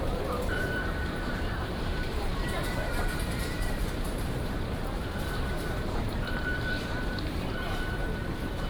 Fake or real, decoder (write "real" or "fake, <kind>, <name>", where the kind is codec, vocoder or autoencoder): fake, vocoder, BigVGAN v2